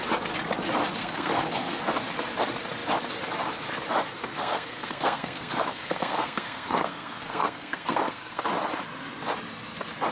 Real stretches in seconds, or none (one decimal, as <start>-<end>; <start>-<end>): 0.0-1.0; 1.8-4.3; 8.4-10.1